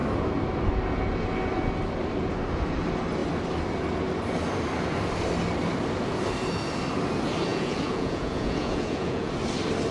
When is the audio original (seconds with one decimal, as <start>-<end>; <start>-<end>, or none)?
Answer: 0.0-7.5; 9.3-9.9